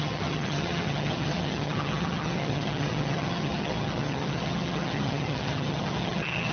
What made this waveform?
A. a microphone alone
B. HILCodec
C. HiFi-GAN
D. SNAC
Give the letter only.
C